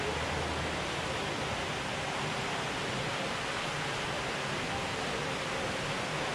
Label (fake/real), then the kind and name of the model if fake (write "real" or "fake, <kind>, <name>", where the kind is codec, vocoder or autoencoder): real